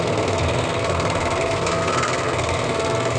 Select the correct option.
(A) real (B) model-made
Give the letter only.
B